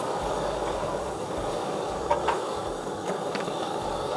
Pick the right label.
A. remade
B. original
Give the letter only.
A